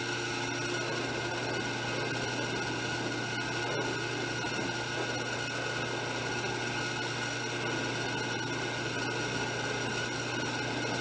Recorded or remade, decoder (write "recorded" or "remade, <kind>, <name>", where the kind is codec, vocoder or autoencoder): recorded